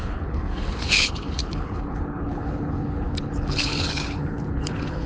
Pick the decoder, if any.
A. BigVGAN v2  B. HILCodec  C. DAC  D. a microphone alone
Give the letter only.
B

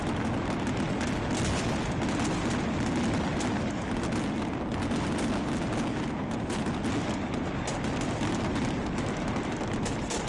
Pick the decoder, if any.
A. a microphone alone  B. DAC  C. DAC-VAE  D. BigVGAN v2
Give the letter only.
A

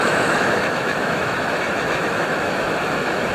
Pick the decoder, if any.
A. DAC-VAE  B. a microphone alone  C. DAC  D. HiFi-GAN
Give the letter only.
A